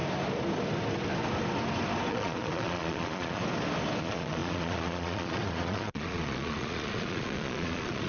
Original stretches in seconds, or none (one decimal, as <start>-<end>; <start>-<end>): 0.0-2.1; 3.4-4.0